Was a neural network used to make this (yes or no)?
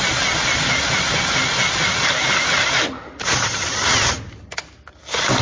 no